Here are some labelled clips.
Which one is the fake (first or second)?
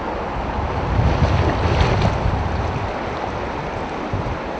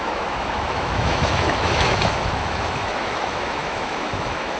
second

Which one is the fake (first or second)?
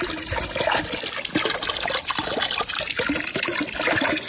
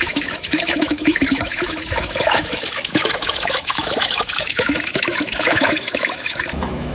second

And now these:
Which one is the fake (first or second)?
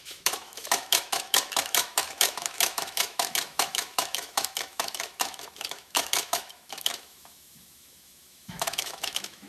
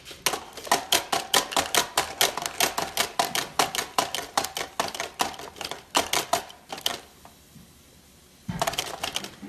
first